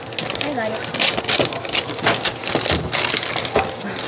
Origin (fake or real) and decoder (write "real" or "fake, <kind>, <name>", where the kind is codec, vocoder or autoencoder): real